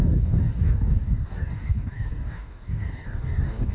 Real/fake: fake